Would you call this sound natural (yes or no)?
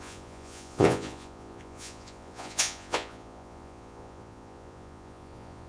no